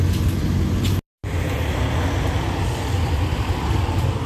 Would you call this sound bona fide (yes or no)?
yes